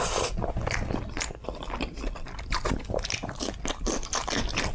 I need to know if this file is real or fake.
real